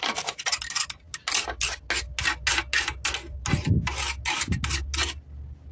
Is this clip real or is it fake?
real